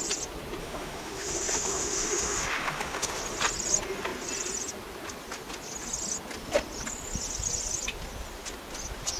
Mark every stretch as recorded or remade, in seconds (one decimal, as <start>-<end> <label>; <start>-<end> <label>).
0.0-0.6 recorded; 0.6-3.2 remade; 3.2-9.2 recorded